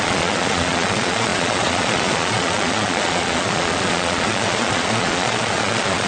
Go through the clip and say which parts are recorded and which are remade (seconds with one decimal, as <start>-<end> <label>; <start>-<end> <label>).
0.0-6.1 remade